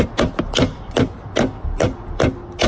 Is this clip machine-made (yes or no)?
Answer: no